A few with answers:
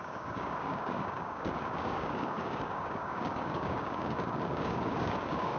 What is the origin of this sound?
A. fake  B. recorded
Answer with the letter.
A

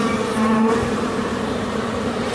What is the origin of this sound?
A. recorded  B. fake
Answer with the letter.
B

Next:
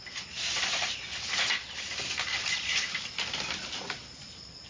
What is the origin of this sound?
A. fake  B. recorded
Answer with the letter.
B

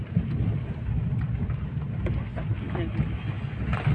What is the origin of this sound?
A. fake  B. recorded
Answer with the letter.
B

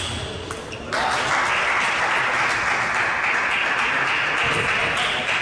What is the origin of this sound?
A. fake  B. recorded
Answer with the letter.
B